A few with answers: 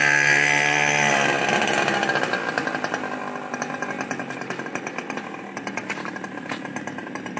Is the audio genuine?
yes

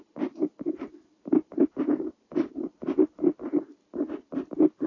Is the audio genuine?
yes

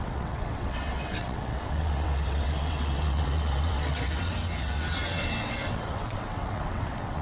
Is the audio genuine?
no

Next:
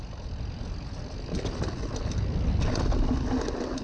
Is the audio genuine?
yes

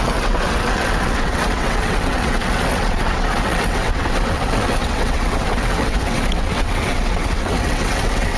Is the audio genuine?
no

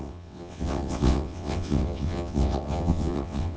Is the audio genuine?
no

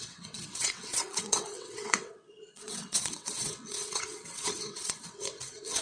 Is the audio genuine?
no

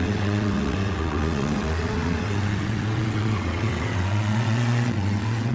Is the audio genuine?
no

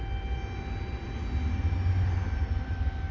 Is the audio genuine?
yes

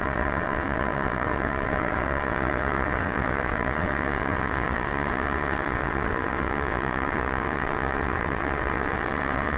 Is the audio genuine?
no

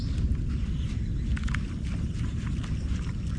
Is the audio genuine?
yes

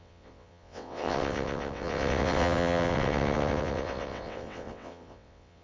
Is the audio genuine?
no